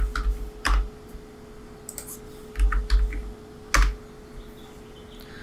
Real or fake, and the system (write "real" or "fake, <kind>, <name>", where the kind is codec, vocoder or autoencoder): real